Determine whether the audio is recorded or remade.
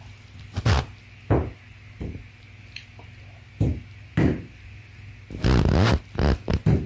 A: recorded